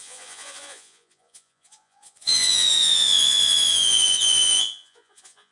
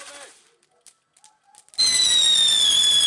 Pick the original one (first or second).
second